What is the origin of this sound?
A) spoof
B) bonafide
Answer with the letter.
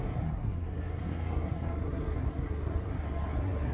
A